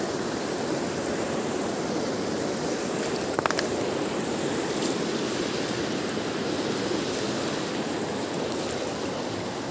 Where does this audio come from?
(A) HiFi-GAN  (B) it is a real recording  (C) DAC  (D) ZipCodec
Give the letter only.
B